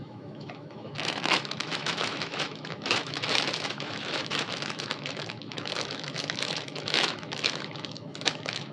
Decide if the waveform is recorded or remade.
remade